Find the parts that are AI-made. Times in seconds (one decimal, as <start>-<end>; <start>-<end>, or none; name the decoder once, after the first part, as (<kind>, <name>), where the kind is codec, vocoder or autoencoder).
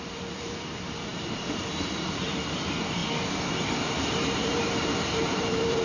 0.0-3.0 (vocoder, BigVGAN v2); 3.7-5.8